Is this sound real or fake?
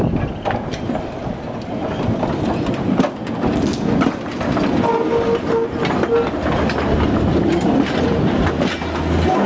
real